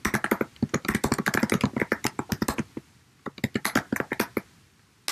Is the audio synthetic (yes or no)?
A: no